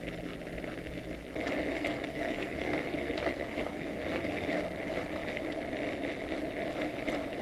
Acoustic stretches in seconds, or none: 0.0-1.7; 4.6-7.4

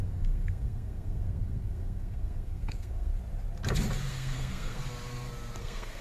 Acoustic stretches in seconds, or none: 3.1-4.1; 4.8-5.6

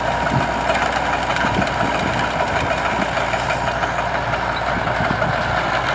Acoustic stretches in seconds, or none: 0.0-5.9

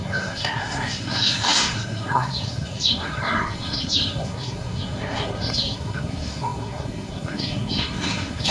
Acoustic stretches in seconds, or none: none

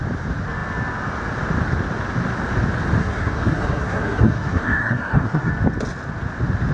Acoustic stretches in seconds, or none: 0.0-3.0; 5.5-6.7

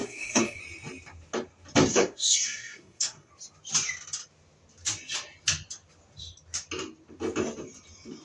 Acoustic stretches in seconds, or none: 0.6-1.9; 3.3-8.2

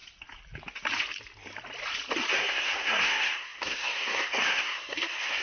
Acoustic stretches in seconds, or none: 0.0-2.3